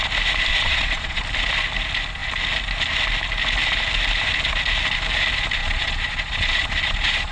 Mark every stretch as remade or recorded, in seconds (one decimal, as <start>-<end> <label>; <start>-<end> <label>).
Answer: 0.0-0.5 recorded; 0.5-1.2 remade; 1.2-5.6 recorded; 5.6-7.3 remade